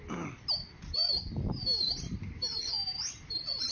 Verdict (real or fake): real